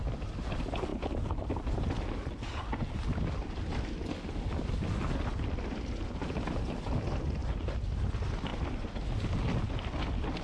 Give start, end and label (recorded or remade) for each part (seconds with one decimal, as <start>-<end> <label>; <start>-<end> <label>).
0.0-10.4 recorded